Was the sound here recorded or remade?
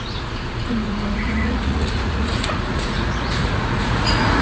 remade